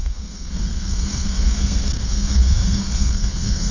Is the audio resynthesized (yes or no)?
yes